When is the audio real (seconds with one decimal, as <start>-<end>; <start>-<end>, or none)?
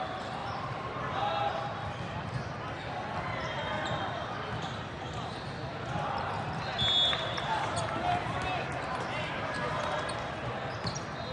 0.0-0.4; 1.0-11.3